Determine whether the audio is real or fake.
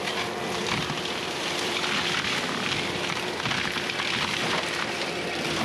fake